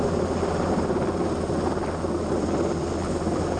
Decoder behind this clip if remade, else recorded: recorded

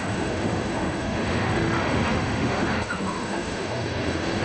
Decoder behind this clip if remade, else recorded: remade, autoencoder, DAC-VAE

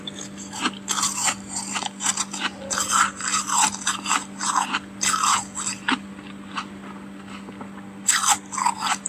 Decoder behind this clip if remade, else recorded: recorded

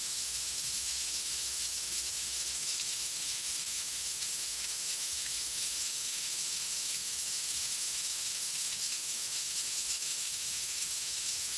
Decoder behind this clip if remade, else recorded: remade, autoencoder, DAC-VAE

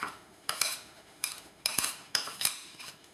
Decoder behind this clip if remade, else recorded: remade, autoencoder, DAC-VAE